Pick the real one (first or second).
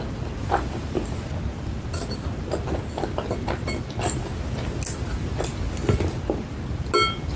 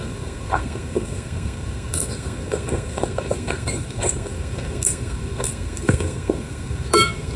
first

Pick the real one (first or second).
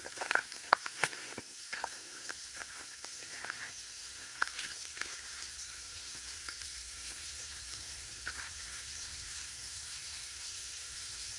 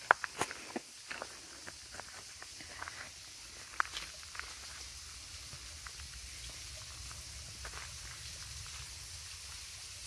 second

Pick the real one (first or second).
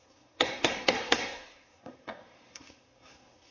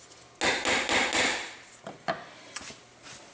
second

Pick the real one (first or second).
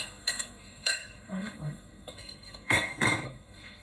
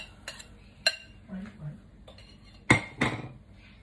second